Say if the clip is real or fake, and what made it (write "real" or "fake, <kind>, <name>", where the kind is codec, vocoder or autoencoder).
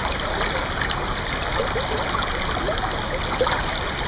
real